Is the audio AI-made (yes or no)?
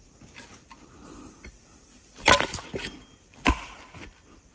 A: yes